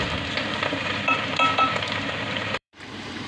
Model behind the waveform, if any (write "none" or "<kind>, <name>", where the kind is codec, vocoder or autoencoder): vocoder, BigVGAN v2